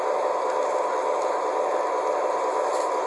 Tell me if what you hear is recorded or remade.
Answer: recorded